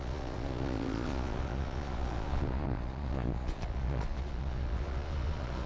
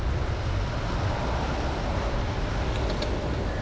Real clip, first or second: second